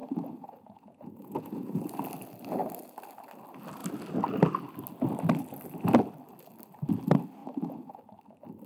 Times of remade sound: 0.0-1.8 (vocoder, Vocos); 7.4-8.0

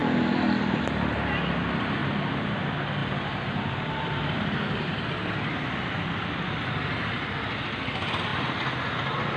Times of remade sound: 0.0-0.8 (vocoder, BigVGAN v2); 2.0-2.6; 3.0-5.1

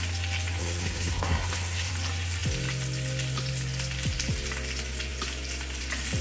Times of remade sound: 0.6-1.9 (codec, SNAC)